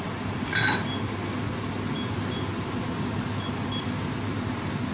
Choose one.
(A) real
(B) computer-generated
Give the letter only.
A